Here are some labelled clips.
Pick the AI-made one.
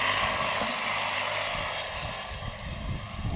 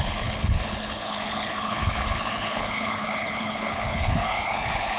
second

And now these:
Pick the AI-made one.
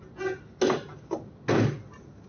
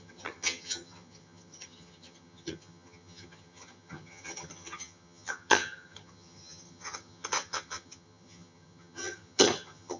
second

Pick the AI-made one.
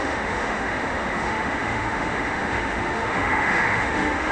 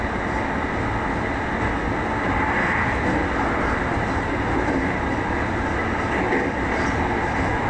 first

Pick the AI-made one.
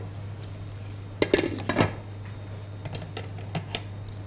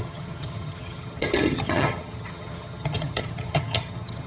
second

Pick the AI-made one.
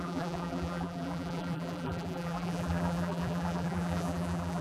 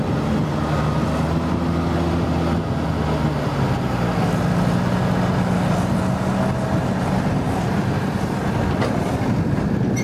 first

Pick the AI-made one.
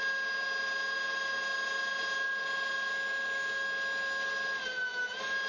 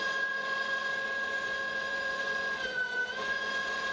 second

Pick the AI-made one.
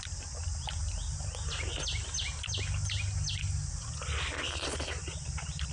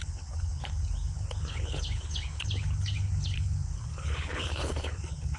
second